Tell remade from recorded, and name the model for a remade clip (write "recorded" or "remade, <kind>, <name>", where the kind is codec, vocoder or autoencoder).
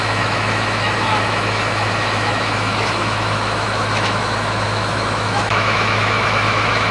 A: remade, autoencoder, DAC-VAE